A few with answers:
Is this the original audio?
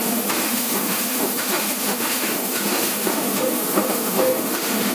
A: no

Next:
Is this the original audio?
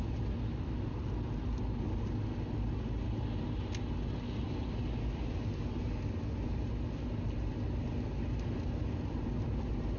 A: yes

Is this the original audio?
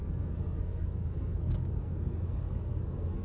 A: no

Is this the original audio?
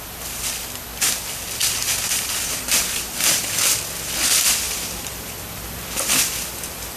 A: no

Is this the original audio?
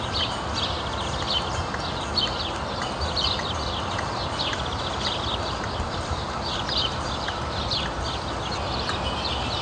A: yes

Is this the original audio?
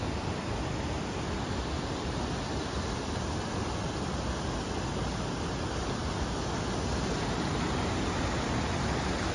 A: yes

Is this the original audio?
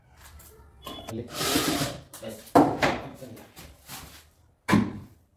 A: no